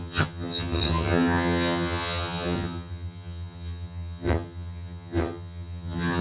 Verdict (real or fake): fake